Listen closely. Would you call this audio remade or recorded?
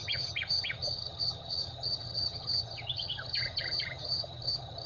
remade